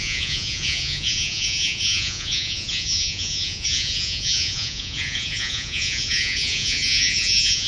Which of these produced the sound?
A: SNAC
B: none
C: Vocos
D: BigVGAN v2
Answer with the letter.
C